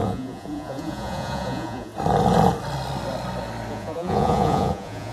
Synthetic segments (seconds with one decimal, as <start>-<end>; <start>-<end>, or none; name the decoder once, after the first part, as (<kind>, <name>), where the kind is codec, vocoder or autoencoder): 0.0-1.9 (vocoder, Vocos); 3.7-5.1